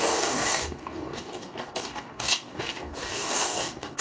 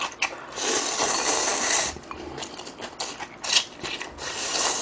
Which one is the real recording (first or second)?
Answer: second